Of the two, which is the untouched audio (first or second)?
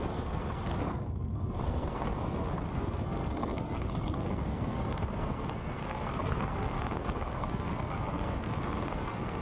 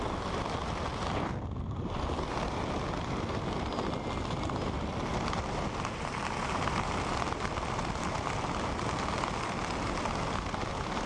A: second